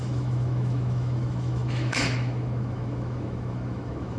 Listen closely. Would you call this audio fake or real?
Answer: fake